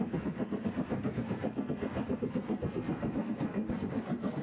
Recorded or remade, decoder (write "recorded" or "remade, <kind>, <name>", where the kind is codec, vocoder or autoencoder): remade, codec, SNAC